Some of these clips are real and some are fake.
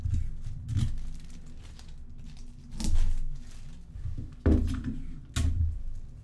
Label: real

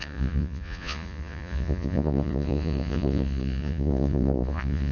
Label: fake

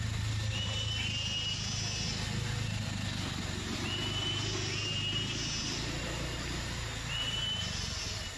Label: real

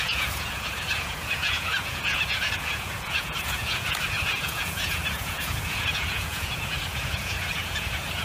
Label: fake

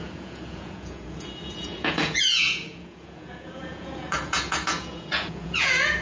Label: fake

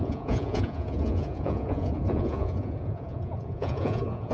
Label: fake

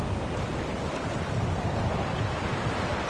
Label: real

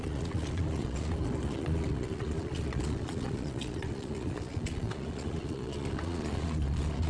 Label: fake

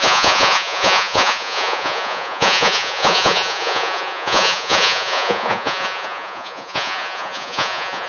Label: fake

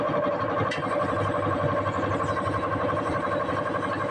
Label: real